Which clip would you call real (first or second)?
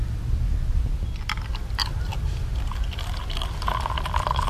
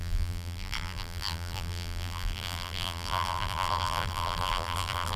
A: first